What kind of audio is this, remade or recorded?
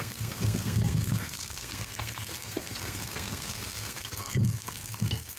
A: remade